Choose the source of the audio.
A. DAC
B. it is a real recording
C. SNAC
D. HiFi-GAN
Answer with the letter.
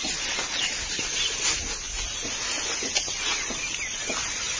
B